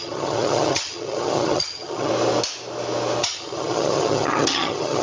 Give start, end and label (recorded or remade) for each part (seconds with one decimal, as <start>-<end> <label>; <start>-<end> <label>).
0.0-2.1 remade; 2.1-3.2 recorded; 3.2-5.0 remade